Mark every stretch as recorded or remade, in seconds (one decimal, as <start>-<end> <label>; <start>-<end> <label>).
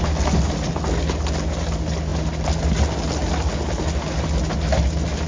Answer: 0.0-5.3 recorded